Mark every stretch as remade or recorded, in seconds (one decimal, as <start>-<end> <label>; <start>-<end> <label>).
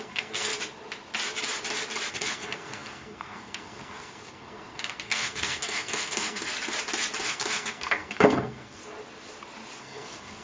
0.0-0.5 remade; 0.5-2.1 recorded; 2.1-6.5 remade; 6.5-7.2 recorded; 7.2-8.8 remade; 8.8-9.8 recorded; 9.8-10.4 remade